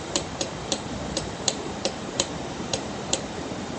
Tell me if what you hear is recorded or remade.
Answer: remade